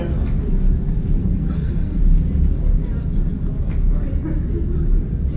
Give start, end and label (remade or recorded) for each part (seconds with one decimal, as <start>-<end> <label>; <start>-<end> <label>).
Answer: 0.0-1.2 recorded; 1.2-2.0 remade; 2.0-5.4 recorded